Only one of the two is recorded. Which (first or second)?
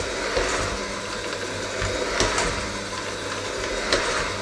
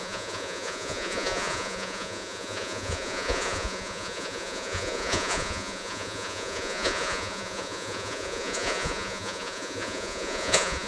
first